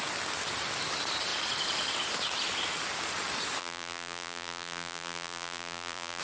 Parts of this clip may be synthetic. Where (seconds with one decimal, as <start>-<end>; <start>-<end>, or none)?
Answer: 3.6-6.2